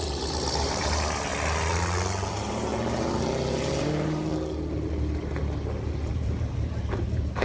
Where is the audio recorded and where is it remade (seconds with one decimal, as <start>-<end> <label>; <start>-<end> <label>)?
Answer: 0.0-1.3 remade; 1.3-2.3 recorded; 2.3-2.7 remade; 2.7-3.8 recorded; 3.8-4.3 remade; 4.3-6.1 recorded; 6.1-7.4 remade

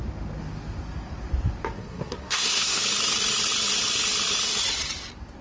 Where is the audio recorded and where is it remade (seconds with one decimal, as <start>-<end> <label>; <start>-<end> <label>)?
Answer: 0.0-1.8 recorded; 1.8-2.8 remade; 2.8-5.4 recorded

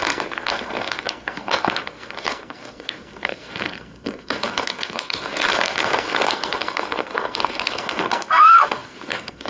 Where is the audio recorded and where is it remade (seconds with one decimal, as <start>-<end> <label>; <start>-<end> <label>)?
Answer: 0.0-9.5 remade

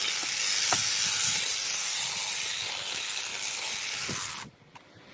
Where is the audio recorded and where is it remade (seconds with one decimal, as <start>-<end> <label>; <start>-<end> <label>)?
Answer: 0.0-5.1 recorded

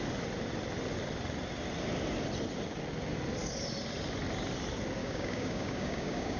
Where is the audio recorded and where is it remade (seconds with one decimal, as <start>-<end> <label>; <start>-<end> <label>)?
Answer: 0.0-5.0 recorded; 5.0-6.4 remade

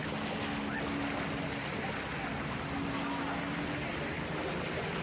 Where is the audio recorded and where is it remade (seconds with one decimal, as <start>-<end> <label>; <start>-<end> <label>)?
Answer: 0.0-1.4 recorded; 1.4-5.0 remade

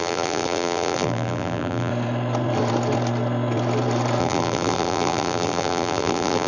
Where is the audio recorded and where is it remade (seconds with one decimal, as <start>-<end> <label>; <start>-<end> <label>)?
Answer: 0.0-1.9 remade; 1.9-4.2 recorded; 4.2-6.5 remade

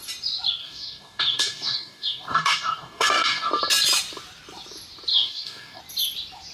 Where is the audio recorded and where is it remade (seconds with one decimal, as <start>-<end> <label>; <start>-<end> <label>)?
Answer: 0.0-0.6 recorded; 0.6-3.5 remade; 3.5-5.1 recorded; 5.1-5.8 remade; 5.8-6.5 recorded